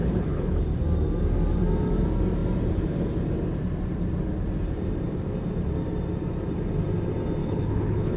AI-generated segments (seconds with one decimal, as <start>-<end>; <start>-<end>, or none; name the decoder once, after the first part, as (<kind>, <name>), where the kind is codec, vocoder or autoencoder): 0.0-0.6 (codec, HILCodec); 7.4-8.2